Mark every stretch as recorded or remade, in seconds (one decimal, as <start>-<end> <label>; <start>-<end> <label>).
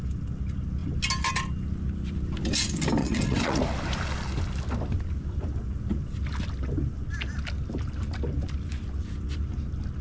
0.0-3.0 recorded; 3.0-3.6 remade; 3.6-10.0 recorded